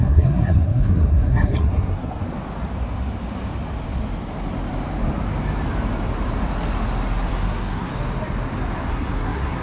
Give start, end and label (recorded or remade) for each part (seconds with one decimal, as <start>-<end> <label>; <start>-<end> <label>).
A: 0.0-2.2 remade; 2.2-7.3 recorded; 7.3-7.9 remade; 7.9-8.9 recorded; 8.9-9.6 remade